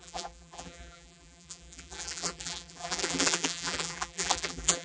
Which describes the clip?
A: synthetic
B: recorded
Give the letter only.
A